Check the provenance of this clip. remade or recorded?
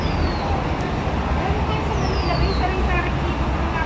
recorded